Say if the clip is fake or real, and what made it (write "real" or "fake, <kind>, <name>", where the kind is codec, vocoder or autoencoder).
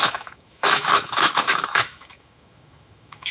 fake, autoencoder, DAC-VAE